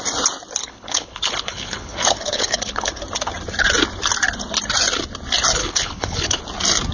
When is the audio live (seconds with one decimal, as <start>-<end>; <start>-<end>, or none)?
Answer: 0.0-0.6; 3.0-5.6; 6.4-6.9